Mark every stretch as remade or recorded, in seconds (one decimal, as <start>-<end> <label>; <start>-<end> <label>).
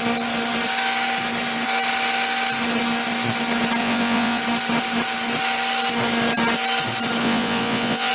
0.0-3.8 recorded; 3.8-4.4 remade; 4.4-7.2 recorded; 7.2-8.1 remade